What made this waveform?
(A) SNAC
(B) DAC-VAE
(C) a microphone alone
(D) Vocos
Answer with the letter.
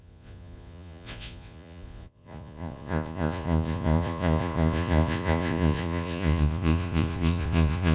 D